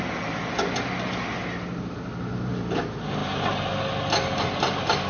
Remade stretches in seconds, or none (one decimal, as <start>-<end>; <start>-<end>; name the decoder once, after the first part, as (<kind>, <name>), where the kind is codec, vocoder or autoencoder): none